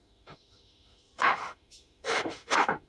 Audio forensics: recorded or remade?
remade